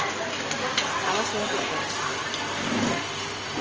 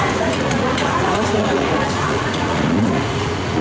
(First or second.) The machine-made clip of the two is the second